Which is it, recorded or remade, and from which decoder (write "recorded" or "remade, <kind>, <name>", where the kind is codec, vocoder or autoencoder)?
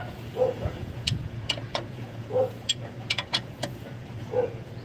remade, vocoder, Vocos